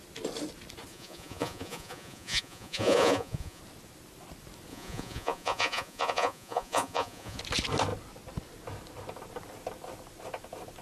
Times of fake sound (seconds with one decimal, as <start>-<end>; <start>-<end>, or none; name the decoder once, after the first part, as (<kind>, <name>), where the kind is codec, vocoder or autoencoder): 0.9-3.6 (vocoder, Vocos); 4.7-7.4